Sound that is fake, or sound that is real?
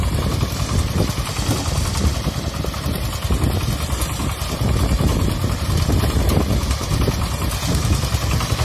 real